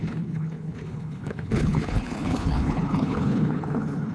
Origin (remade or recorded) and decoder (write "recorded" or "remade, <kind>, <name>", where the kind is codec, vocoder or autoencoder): remade, codec, HILCodec